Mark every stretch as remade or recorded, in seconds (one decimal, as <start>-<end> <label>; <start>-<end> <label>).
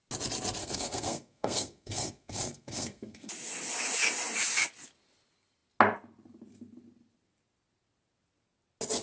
0.0-0.6 recorded; 0.6-3.3 remade; 3.3-9.0 recorded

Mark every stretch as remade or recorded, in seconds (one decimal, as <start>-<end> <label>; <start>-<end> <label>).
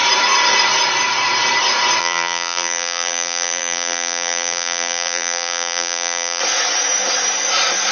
0.0-2.0 recorded; 2.0-6.4 remade; 6.4-7.9 recorded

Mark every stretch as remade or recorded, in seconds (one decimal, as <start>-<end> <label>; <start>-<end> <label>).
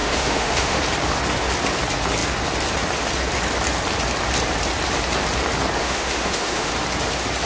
0.0-0.8 remade; 0.8-5.8 recorded; 5.8-6.7 remade; 6.7-7.5 recorded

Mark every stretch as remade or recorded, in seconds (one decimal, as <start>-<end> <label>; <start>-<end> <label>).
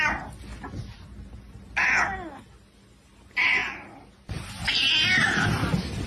0.0-6.1 recorded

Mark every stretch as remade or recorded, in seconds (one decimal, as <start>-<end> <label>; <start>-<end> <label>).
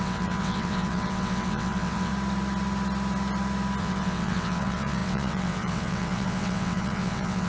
0.0-2.1 remade; 2.1-3.8 recorded; 3.8-7.5 remade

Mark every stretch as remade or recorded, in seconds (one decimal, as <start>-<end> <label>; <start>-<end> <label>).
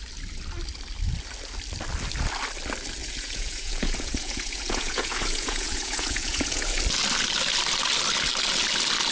0.0-3.0 recorded; 3.0-6.8 remade; 6.8-9.1 recorded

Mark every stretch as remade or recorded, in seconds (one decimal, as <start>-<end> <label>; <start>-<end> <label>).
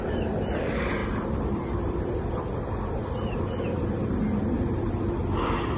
0.0-1.0 recorded; 1.0-2.3 remade; 2.3-5.8 recorded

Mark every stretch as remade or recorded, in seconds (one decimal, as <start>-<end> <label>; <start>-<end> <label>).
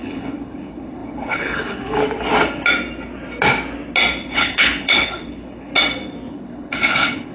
0.0-2.0 remade; 2.0-4.3 recorded; 4.3-5.7 remade; 5.7-6.3 recorded; 6.3-7.3 remade